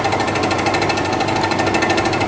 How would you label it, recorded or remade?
recorded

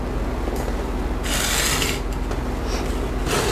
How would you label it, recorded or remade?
recorded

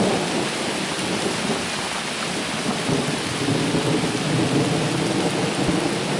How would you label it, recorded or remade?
recorded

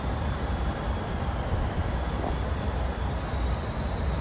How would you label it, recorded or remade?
remade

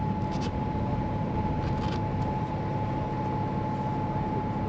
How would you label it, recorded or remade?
recorded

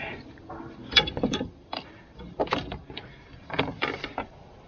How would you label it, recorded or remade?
remade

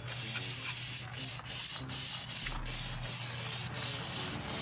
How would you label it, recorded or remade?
recorded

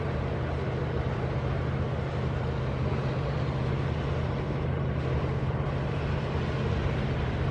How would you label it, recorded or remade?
recorded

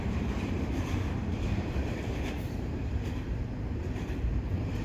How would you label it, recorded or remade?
remade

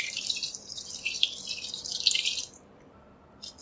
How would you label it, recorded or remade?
remade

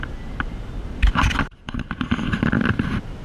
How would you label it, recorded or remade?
remade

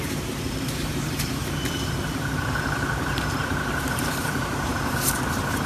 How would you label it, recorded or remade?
remade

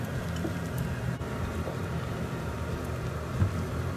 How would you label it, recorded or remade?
remade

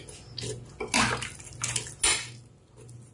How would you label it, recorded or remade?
recorded